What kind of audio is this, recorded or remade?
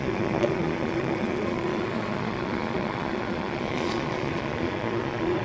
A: remade